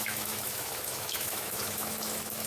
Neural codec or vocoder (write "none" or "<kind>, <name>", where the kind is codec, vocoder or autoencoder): autoencoder, DAC-VAE